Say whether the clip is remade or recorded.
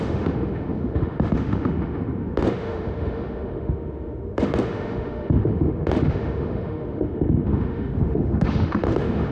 remade